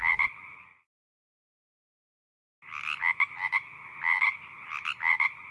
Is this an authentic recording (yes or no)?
yes